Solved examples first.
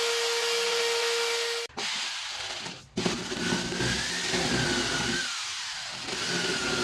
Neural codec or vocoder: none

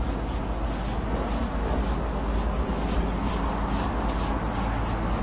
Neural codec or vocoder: none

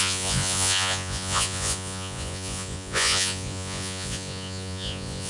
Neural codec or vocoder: vocoder, Vocos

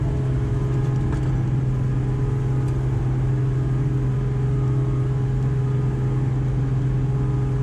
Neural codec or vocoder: none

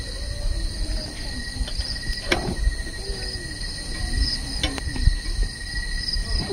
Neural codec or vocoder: none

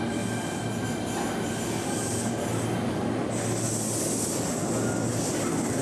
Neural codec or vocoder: none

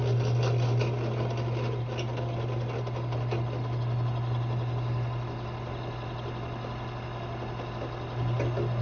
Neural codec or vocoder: none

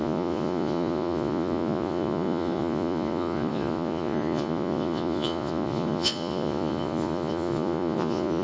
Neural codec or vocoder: vocoder, Vocos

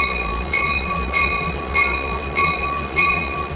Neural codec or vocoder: vocoder, Vocos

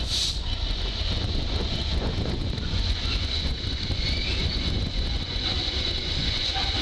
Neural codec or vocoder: vocoder, Vocos